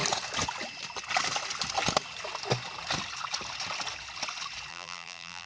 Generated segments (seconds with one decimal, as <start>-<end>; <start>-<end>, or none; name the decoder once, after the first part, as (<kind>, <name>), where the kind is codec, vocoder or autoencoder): 4.7-5.5 (vocoder, BigVGAN v2)